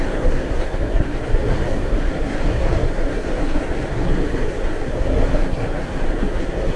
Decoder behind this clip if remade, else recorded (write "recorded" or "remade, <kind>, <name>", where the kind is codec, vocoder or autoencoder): remade, codec, SNAC